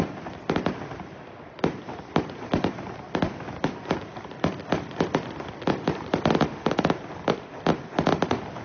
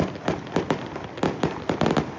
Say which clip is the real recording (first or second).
second